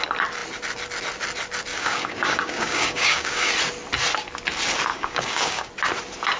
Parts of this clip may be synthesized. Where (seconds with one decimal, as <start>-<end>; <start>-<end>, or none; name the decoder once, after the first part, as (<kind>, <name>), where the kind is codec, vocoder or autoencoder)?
1.7-3.5 (codec, DAC); 4.9-5.7